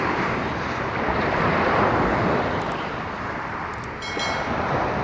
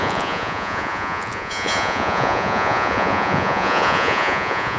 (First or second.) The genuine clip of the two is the first